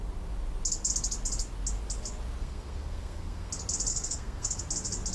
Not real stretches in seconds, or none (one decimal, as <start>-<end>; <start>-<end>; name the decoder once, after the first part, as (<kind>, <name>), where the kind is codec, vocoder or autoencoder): 2.4-3.5 (codec, SNAC); 3.9-4.6